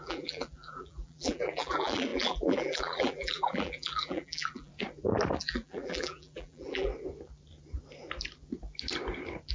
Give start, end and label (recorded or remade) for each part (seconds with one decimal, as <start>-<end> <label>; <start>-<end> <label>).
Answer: 0.0-4.7 remade; 4.7-5.4 recorded; 5.4-6.9 remade; 6.9-9.5 recorded